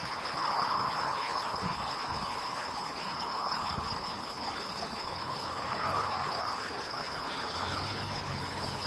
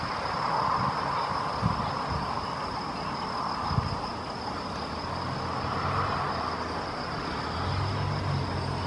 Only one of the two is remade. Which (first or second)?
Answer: first